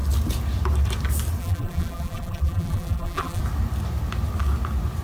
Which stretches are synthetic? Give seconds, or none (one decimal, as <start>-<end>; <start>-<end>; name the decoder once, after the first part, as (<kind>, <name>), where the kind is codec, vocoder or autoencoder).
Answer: 1.4-3.4 (vocoder, BigVGAN v2)